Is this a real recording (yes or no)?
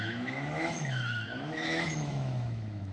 no